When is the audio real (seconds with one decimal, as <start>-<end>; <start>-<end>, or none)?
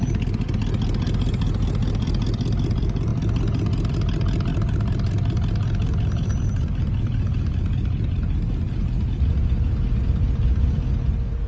0.0-4.5; 9.2-11.5